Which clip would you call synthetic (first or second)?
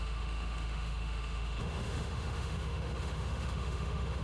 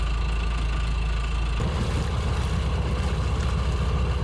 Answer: first